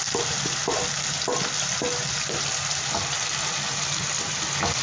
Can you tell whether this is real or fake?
real